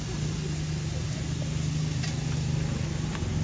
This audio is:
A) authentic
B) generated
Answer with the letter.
A